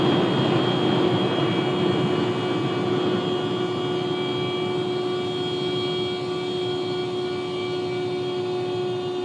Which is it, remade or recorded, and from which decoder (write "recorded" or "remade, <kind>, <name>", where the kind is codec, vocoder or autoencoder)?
recorded